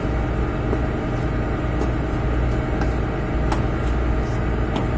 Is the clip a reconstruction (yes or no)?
no